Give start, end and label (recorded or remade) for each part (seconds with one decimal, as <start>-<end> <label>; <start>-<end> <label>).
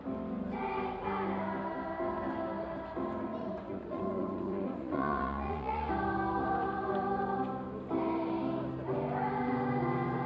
0.0-3.3 recorded; 3.3-5.9 remade; 5.9-10.3 recorded